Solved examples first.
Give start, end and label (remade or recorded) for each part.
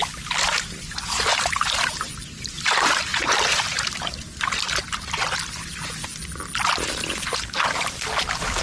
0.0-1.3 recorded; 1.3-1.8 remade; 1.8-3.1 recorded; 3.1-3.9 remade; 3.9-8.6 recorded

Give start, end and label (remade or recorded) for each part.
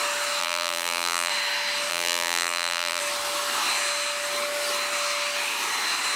0.0-0.4 recorded; 0.4-1.3 remade; 1.3-1.9 recorded; 1.9-3.0 remade; 3.0-6.2 recorded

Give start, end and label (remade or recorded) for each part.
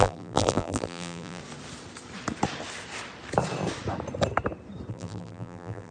0.0-1.4 remade; 1.4-4.9 recorded; 4.9-5.9 remade